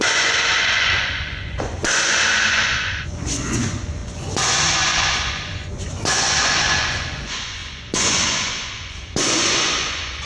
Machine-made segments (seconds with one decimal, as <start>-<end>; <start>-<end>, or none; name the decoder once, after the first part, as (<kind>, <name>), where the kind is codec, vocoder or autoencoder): 0.0-10.3 (vocoder, Vocos)